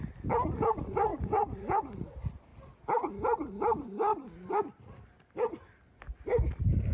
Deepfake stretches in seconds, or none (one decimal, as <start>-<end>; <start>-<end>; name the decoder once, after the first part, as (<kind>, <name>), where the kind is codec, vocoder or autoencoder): none